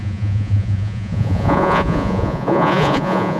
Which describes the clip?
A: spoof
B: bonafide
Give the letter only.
A